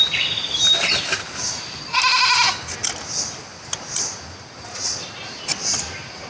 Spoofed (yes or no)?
no